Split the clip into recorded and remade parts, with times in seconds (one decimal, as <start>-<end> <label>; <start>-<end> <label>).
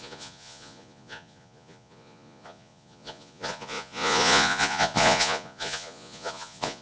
0.0-6.8 remade